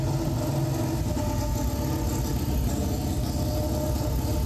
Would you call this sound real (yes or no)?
yes